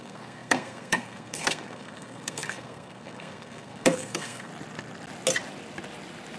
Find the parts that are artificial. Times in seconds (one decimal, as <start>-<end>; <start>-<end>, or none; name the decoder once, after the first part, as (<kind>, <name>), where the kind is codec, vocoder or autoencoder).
0.0-4.5 (codec, SNAC)